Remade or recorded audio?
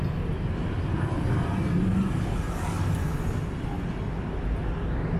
recorded